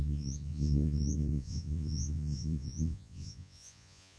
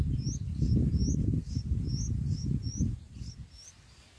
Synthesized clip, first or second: first